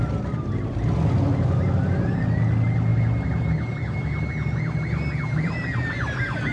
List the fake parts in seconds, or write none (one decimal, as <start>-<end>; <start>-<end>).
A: none